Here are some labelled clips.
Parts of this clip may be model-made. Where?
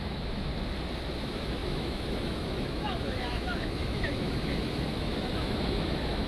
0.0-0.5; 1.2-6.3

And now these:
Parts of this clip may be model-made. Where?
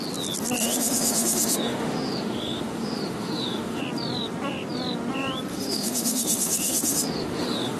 0.6-3.8; 5.5-7.8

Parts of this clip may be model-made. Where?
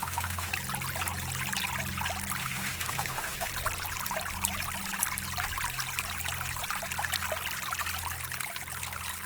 0.0-0.5; 2.4-3.5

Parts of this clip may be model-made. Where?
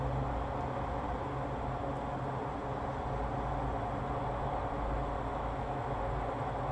5.3-6.0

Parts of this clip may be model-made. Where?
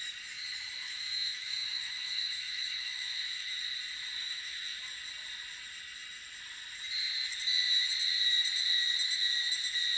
0.8-3.6; 4.2-4.8